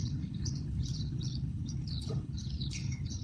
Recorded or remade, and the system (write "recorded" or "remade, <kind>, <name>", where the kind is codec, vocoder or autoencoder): remade, codec, HILCodec